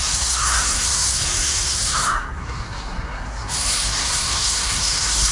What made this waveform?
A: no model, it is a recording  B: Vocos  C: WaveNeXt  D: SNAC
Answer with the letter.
D